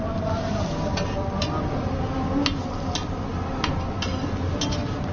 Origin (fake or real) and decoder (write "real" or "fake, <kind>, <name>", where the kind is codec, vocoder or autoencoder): real